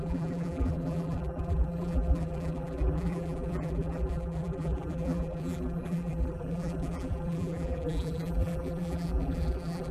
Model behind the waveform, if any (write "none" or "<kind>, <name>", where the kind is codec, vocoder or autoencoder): vocoder, BigVGAN v2